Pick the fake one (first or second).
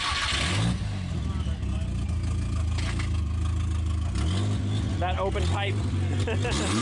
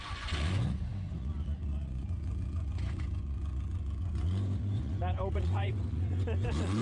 second